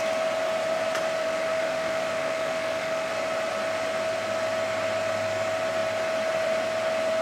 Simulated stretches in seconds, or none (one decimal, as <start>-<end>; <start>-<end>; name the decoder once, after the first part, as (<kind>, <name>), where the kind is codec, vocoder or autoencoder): 1.2-3.1 (autoencoder, DAC-VAE)